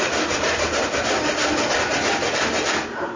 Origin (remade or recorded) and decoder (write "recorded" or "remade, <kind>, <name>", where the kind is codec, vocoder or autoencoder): recorded